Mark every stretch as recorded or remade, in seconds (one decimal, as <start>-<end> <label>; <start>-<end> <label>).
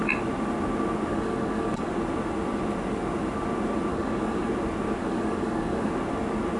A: 0.0-1.1 recorded; 1.1-1.9 remade; 1.9-3.9 recorded; 3.9-4.5 remade; 4.5-5.0 recorded; 5.0-5.9 remade; 5.9-6.6 recorded